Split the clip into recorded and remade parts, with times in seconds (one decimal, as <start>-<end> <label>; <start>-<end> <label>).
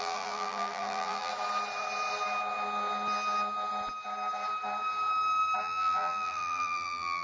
0.0-1.3 remade; 1.3-5.6 recorded; 5.6-7.2 remade